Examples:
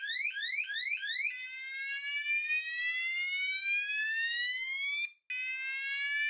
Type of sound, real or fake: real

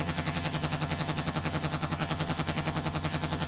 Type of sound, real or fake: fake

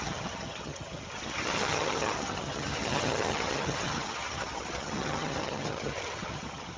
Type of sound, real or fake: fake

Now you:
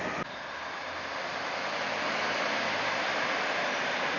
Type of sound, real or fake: real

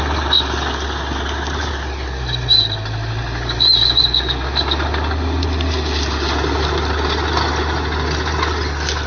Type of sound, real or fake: real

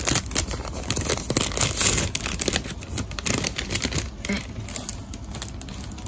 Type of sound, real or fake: real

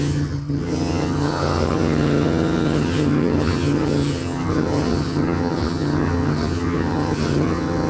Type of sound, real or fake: fake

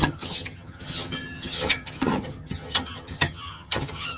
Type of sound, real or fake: fake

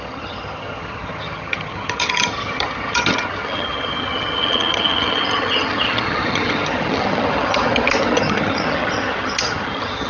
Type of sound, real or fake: fake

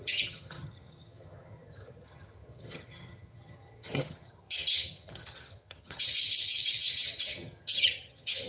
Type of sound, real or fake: fake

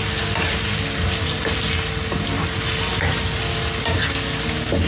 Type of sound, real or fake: real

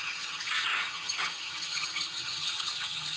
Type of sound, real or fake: fake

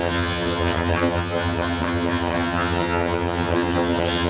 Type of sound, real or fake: fake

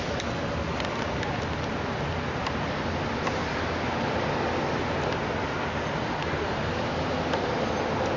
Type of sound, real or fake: real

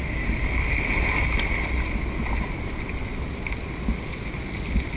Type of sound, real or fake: real